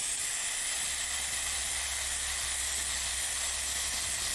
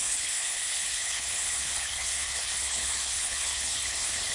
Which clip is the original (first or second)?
first